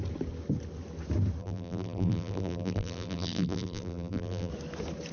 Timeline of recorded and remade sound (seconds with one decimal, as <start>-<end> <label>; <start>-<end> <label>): 0.0-1.4 recorded; 1.4-4.5 remade; 4.5-5.1 recorded